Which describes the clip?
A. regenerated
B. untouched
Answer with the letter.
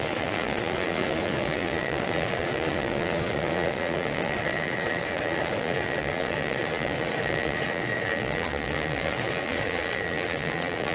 A